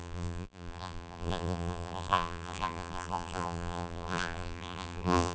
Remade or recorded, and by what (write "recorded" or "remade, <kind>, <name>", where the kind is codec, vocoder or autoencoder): remade, vocoder, BigVGAN v2